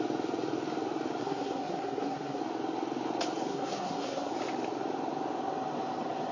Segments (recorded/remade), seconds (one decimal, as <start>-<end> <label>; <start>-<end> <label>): 0.0-1.2 recorded; 1.2-2.4 remade; 2.4-3.5 recorded; 3.5-4.3 remade; 4.3-6.3 recorded